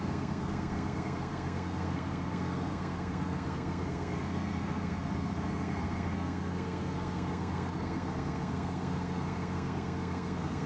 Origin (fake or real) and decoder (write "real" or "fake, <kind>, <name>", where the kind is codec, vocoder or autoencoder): fake, codec, SNAC